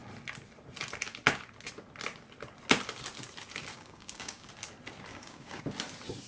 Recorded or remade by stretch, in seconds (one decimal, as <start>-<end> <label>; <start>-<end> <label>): 0.0-3.7 recorded; 3.7-4.5 remade; 4.5-5.1 recorded; 5.1-5.6 remade; 5.6-6.3 recorded